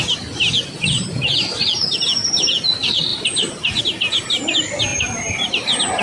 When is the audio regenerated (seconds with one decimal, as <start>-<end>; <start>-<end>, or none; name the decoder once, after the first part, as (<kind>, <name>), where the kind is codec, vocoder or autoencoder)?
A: 3.1-3.8 (vocoder, BigVGAN v2); 4.9-5.5

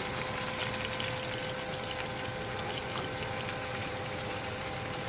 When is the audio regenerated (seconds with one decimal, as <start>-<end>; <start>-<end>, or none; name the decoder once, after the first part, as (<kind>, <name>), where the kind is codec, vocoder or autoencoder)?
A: 0.0-0.6 (vocoder, BigVGAN v2); 3.7-5.1

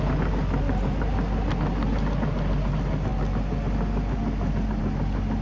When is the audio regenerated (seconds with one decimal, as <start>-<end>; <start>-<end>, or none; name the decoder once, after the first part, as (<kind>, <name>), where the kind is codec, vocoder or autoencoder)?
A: none

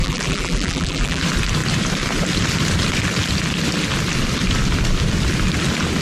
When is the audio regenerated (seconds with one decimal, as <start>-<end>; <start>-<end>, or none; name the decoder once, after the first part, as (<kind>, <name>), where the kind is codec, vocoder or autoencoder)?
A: 0.0-1.2 (vocoder, BigVGAN v2)